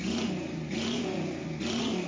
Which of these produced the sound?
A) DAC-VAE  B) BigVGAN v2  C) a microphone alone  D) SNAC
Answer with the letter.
C